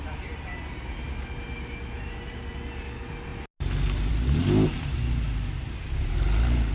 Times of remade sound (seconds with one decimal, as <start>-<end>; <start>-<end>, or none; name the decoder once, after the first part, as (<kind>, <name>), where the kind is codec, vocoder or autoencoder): none